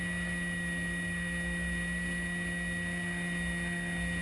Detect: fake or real real